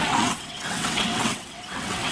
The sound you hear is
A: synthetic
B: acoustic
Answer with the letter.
A